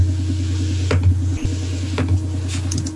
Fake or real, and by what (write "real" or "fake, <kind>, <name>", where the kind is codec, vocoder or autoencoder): real